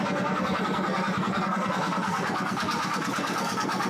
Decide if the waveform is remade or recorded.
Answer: remade